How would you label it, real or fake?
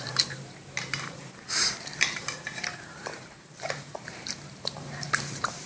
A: fake